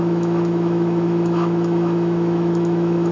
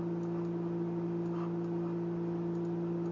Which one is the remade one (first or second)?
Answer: first